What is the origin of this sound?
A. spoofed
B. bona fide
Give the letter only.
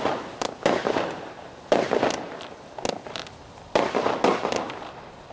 B